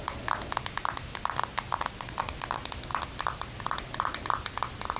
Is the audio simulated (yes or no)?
no